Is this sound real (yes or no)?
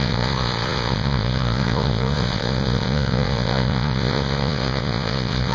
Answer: no